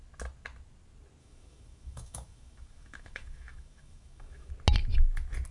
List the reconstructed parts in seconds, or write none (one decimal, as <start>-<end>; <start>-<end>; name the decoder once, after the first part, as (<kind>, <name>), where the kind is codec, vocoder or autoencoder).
1.2-4.5 (autoencoder, DAC-VAE)